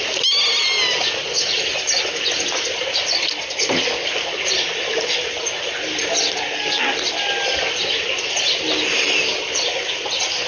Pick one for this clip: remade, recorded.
recorded